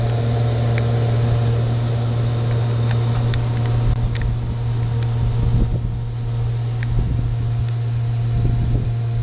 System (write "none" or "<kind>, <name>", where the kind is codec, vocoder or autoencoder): none